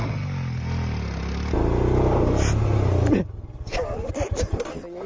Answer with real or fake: real